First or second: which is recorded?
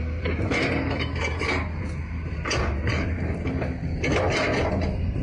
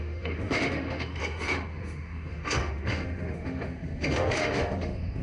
first